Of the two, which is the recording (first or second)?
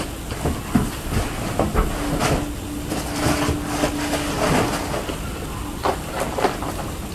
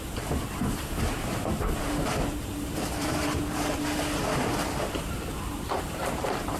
first